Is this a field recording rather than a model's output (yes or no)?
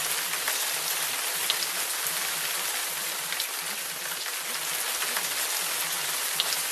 yes